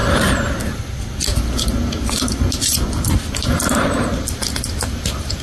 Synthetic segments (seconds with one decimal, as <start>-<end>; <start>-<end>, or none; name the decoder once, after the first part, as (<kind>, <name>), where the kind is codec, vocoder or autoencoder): none